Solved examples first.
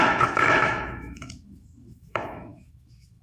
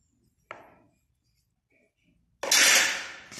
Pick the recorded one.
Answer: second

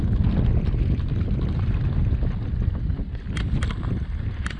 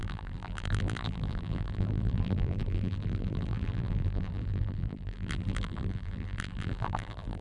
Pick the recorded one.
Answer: first